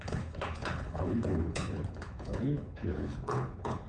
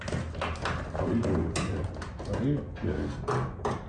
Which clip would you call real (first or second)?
second